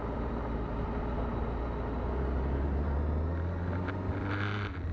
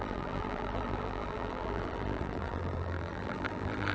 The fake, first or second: second